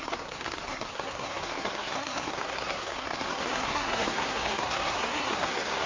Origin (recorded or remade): remade